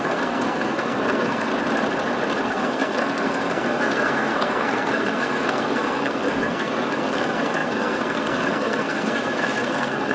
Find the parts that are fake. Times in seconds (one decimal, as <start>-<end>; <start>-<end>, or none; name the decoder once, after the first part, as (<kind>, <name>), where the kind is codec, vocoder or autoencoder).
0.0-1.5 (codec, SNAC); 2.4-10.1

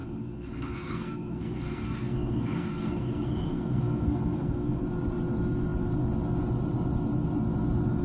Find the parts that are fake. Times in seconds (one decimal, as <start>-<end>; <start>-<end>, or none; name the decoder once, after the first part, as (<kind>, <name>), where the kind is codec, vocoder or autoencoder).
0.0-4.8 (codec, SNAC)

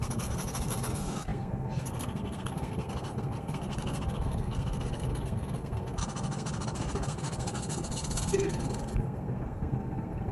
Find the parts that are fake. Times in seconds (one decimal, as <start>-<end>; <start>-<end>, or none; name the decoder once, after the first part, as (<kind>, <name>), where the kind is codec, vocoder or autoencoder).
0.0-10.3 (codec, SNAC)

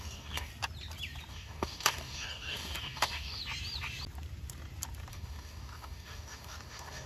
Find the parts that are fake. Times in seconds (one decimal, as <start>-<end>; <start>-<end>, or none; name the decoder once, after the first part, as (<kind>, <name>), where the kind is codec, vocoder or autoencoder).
0.0-0.5 (codec, DAC); 1.3-3.4; 5.1-7.1

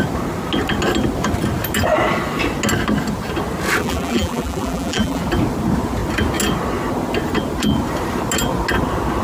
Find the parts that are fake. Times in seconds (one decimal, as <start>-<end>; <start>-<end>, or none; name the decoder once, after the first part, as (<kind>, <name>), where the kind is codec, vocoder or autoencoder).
3.8-5.2 (vocoder, BigVGAN v2)

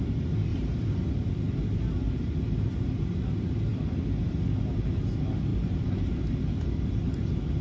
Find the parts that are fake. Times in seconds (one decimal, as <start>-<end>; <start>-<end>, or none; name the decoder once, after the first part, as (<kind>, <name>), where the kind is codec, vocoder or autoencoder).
0.5-1.3 (vocoder, BigVGAN v2); 2.0-3.0; 5.5-6.4